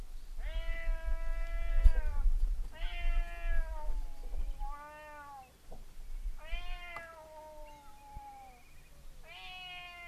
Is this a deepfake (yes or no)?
no